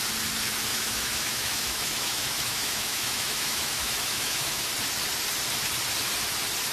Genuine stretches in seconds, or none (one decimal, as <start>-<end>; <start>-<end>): 0.0-0.7; 4.7-6.7